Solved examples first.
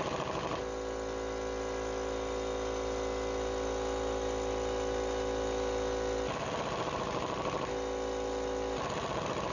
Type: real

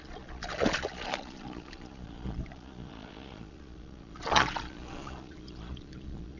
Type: fake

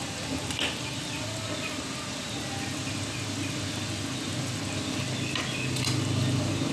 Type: real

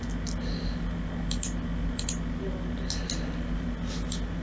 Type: real